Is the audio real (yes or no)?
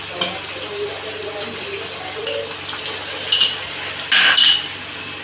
yes